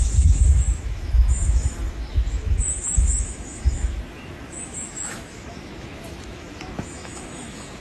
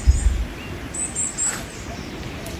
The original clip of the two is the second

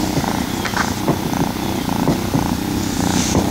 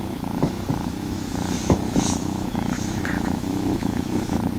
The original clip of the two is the first